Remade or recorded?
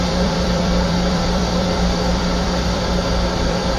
remade